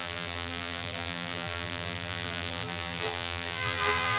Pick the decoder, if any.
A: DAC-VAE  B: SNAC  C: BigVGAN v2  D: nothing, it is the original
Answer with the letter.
C